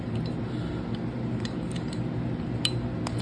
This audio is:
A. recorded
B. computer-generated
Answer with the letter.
A